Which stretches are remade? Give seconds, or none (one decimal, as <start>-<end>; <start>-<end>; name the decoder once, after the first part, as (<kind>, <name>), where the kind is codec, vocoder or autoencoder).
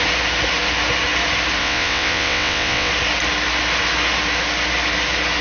1.6-2.9 (vocoder, WaveNeXt)